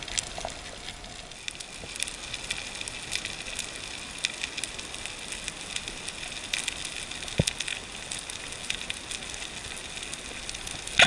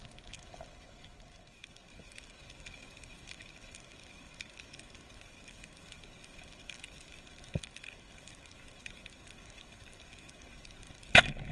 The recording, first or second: first